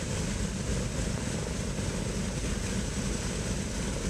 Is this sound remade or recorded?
recorded